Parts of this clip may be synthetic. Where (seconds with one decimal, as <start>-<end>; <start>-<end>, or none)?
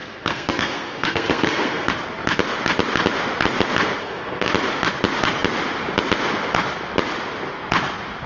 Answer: 0.0-1.9; 4.0-4.5